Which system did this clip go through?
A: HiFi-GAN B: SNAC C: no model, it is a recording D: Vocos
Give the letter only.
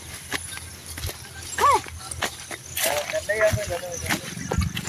C